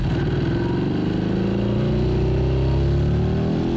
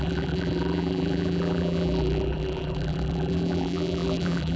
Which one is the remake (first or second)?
second